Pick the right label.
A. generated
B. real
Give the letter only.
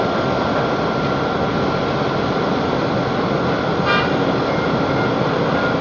B